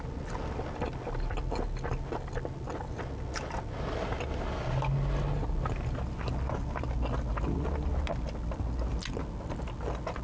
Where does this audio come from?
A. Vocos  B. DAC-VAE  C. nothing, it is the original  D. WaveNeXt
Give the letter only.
C